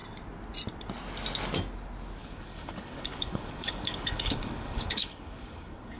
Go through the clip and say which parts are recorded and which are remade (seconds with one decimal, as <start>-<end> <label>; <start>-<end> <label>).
0.0-2.2 recorded; 2.2-6.0 remade